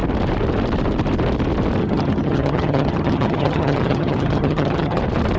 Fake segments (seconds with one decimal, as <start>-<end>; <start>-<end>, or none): 1.8-5.0